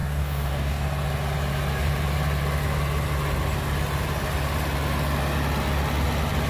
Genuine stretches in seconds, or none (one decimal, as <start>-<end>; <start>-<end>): 0.8-6.5